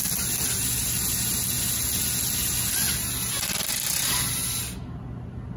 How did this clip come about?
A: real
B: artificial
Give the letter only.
A